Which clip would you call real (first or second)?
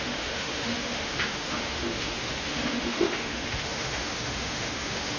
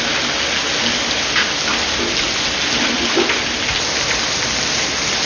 second